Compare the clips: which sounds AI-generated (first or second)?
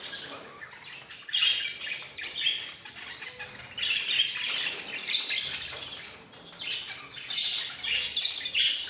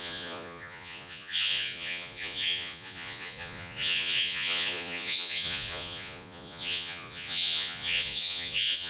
second